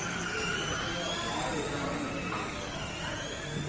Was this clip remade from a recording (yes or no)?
no